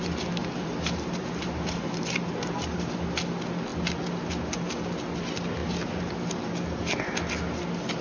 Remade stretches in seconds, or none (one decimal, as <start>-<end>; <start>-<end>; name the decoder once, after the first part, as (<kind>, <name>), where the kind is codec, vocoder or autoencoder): 0.4-2.0 (vocoder, BigVGAN v2); 5.6-6.1